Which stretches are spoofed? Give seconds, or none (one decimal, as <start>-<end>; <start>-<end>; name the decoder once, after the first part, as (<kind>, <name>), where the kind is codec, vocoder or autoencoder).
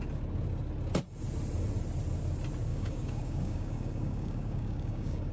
2.7-5.3 (codec, DAC)